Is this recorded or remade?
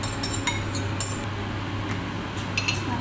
recorded